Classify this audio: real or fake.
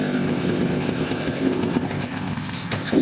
fake